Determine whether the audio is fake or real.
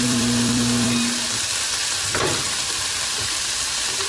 fake